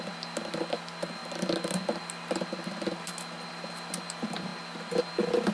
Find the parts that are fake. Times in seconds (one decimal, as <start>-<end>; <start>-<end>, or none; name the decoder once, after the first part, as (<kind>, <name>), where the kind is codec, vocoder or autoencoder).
none